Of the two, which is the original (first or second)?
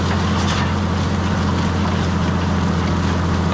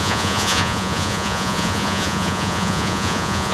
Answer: first